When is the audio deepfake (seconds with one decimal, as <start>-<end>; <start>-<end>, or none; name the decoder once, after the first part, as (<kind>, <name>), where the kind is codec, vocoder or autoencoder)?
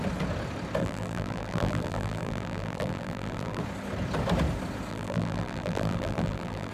0.8-3.6 (vocoder, BigVGAN v2); 4.9-6.7